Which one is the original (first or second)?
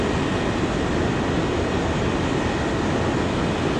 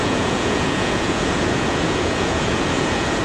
first